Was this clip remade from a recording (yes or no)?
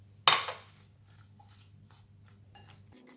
no